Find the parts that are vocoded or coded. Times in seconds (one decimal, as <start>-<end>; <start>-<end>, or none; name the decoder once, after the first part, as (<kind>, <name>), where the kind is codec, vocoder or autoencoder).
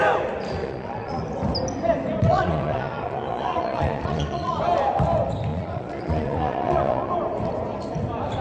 0.6-1.2 (vocoder, Vocos); 2.2-4.6; 5.5-7.1